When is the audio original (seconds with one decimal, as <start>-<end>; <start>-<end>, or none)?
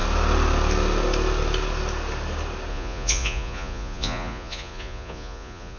0.0-2.7